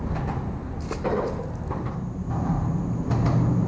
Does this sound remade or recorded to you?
recorded